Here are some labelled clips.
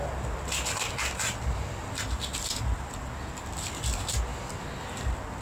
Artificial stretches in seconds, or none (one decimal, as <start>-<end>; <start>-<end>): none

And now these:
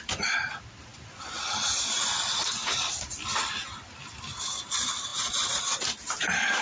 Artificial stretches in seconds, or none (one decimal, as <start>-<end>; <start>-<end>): 0.0-0.9; 2.1-5.1

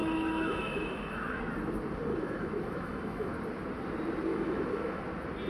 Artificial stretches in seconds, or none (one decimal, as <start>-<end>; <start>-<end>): 0.0-1.4; 2.1-3.3; 4.3-5.0